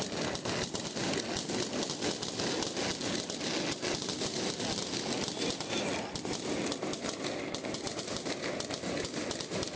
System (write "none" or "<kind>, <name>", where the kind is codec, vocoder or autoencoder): none